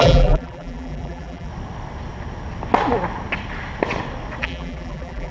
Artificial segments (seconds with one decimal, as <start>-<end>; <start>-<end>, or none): 0.0-1.5; 4.4-5.3